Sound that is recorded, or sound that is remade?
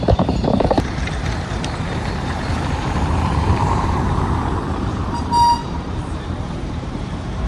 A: remade